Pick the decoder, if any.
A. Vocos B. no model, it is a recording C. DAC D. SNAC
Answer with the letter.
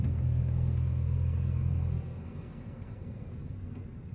D